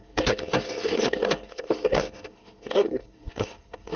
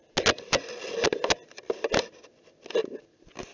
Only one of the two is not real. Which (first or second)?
first